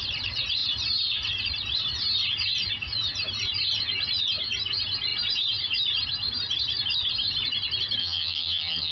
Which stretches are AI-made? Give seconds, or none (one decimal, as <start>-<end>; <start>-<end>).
8.0-8.9